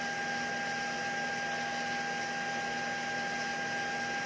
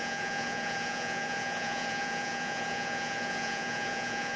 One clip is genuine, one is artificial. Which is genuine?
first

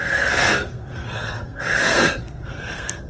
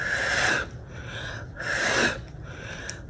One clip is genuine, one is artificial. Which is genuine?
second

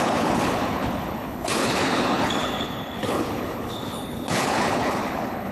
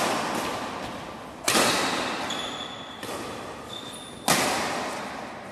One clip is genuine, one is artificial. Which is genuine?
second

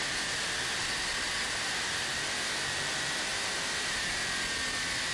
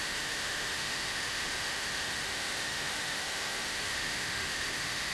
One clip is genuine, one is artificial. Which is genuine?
first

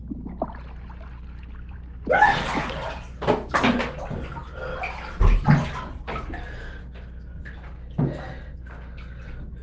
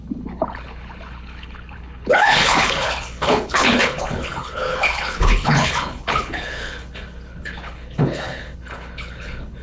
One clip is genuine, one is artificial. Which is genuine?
first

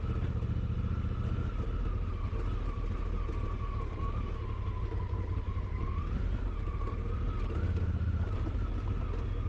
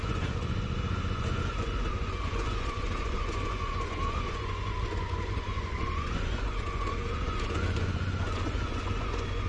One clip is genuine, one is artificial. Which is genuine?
first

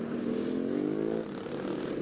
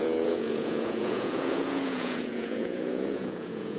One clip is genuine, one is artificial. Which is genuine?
first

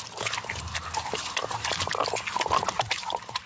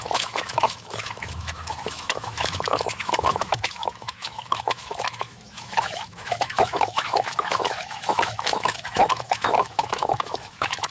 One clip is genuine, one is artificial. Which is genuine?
first